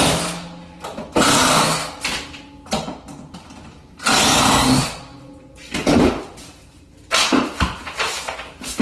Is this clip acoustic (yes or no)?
yes